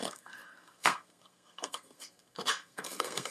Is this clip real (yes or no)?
no